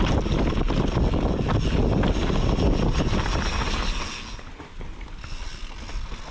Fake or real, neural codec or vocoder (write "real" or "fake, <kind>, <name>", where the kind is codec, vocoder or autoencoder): real